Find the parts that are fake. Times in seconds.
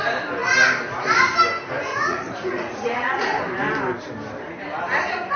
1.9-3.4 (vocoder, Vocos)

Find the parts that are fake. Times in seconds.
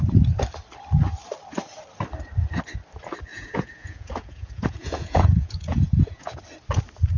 3.3-6.4 (vocoder, Vocos)